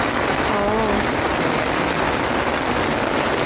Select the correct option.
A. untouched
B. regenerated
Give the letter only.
A